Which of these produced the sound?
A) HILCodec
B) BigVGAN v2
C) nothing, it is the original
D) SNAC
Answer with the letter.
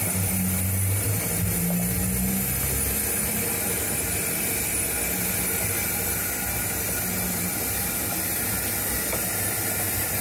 C